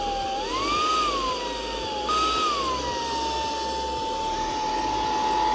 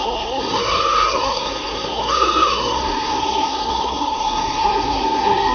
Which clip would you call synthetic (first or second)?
second